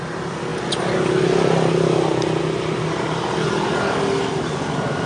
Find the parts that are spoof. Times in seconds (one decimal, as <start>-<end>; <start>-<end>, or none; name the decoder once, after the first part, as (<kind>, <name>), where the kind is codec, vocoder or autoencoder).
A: none